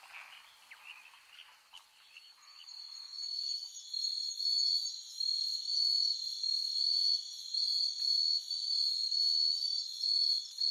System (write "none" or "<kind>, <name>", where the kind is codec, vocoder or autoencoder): none